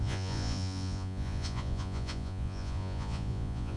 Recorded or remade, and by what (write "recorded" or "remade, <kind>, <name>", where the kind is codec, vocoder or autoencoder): remade, vocoder, Vocos